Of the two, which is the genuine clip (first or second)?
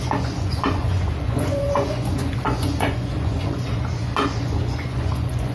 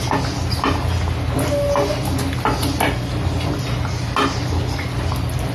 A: second